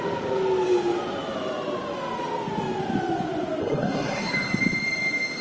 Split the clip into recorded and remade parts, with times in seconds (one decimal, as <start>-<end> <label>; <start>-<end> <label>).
0.0-3.6 recorded; 3.6-4.3 remade; 4.3-5.4 recorded

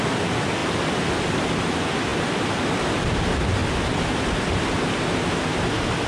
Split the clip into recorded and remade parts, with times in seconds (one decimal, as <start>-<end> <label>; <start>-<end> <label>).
0.0-6.1 recorded

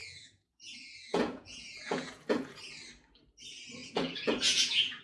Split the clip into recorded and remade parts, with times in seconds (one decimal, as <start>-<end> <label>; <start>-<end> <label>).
0.0-2.6 remade; 2.6-3.8 recorded; 3.8-5.0 remade

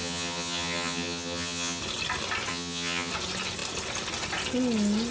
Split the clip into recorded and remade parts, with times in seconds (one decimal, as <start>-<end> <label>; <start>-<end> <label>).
0.0-1.8 remade; 1.8-2.5 recorded; 2.5-3.1 remade; 3.1-5.1 recorded

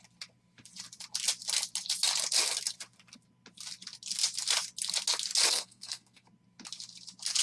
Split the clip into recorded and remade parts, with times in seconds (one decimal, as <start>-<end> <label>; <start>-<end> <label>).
0.0-5.5 recorded; 5.5-6.3 remade; 6.3-7.4 recorded

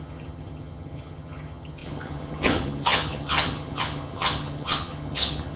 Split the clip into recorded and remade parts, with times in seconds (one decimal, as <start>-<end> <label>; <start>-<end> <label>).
0.0-5.6 remade

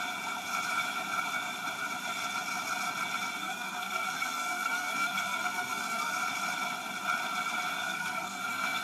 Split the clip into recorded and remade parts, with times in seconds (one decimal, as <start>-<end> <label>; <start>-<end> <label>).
0.0-3.4 recorded; 3.4-6.1 remade; 6.1-7.9 recorded; 7.9-8.8 remade